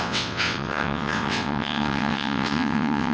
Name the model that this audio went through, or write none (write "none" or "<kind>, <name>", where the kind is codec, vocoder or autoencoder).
vocoder, WaveNeXt